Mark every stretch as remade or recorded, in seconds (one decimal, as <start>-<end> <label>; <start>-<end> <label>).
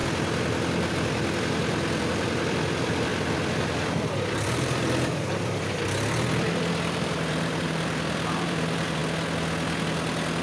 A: 0.0-0.9 recorded; 0.9-9.0 remade; 9.0-10.4 recorded